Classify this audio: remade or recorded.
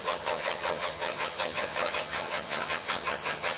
remade